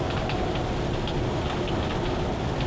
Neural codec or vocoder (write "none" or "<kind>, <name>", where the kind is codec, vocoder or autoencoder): none